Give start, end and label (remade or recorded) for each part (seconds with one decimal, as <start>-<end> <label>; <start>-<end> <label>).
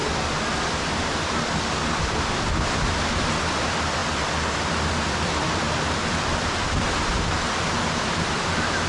0.0-8.9 remade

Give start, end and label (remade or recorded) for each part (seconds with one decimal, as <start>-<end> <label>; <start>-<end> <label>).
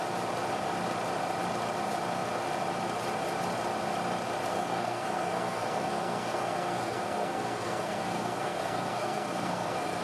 0.0-4.5 recorded; 4.5-10.0 remade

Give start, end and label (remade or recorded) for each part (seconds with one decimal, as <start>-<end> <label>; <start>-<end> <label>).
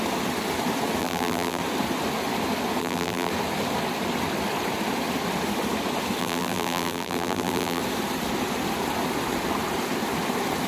0.0-1.0 recorded; 1.0-1.6 remade; 1.6-2.8 recorded; 2.8-3.3 remade; 3.3-6.2 recorded; 6.2-7.8 remade; 7.8-10.7 recorded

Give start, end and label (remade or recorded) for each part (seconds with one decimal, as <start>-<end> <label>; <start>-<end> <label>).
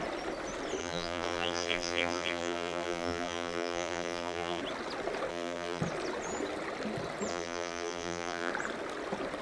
0.0-0.8 recorded; 0.8-4.6 remade; 4.6-5.3 recorded; 5.3-5.8 remade; 5.8-7.3 recorded; 7.3-8.5 remade; 8.5-9.4 recorded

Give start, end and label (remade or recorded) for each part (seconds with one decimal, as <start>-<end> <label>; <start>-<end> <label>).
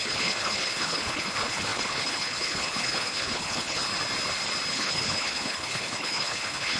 0.0-3.9 remade; 3.9-4.7 recorded; 4.7-6.8 remade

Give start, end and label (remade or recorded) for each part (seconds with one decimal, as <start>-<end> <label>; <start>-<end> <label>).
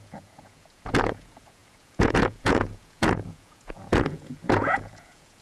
0.0-5.4 remade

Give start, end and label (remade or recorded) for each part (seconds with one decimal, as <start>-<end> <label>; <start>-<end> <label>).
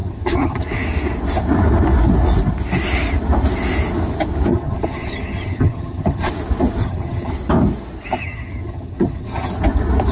0.0-0.6 remade; 0.6-4.5 recorded; 4.5-6.3 remade; 6.3-6.8 recorded; 6.8-7.3 remade; 7.3-8.2 recorded; 8.2-9.5 remade; 9.5-10.1 recorded